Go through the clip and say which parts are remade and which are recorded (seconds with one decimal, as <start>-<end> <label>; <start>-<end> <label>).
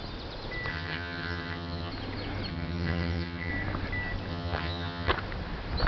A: 0.0-0.7 recorded; 0.7-1.9 remade; 1.9-2.5 recorded; 2.5-3.5 remade; 3.5-4.3 recorded; 4.3-5.1 remade; 5.1-5.9 recorded